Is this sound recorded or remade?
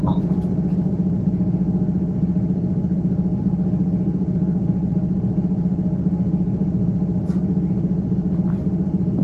recorded